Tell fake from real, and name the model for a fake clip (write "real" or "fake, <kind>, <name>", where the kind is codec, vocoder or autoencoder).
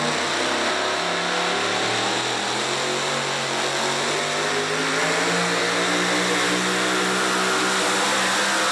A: real